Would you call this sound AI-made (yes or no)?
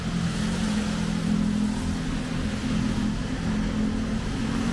no